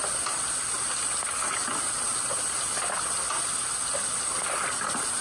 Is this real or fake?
real